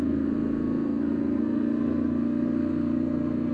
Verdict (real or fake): fake